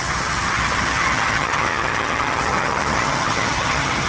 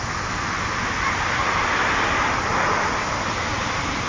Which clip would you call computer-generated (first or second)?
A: first